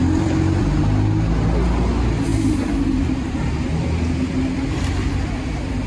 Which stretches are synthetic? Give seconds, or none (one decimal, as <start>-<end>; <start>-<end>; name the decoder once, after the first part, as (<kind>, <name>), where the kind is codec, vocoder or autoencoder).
0.0-0.8 (vocoder, BigVGAN v2)